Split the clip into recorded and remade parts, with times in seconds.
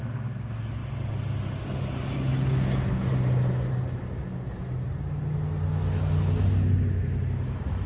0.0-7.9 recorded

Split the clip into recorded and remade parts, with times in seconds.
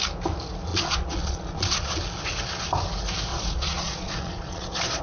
0.0-0.7 recorded; 0.7-2.0 remade; 2.0-3.3 recorded; 3.3-5.0 remade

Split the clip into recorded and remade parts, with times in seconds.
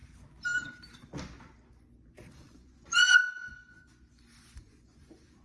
0.0-2.3 recorded; 2.3-3.2 remade; 3.2-3.7 recorded; 3.7-5.4 remade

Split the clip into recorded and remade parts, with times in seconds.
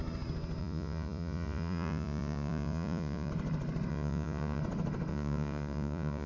0.0-0.6 recorded; 0.6-3.3 remade; 3.3-3.9 recorded; 3.9-4.6 remade; 4.6-5.1 recorded; 5.1-6.3 remade